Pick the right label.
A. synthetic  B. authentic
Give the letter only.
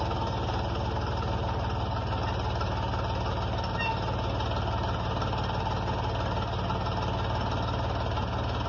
B